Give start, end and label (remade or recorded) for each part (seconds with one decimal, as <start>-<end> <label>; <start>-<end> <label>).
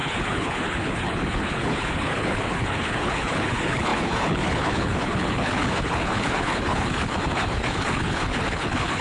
0.0-9.0 remade